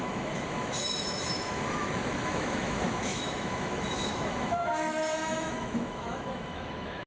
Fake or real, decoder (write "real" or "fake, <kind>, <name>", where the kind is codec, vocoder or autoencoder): fake, autoencoder, DAC-VAE